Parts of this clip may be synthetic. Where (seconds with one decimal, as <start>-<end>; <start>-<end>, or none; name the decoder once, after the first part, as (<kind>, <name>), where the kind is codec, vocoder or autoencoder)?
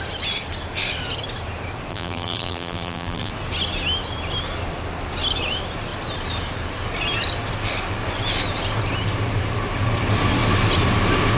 1.9-3.3 (vocoder, BigVGAN v2)